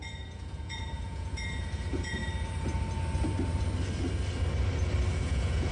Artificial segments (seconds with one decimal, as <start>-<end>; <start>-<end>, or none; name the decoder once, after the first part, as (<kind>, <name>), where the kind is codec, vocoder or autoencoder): 0.0-2.2 (vocoder, Vocos); 5.2-5.7